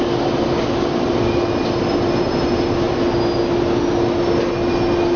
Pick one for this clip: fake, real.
real